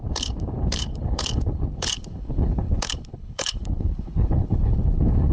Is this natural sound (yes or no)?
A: no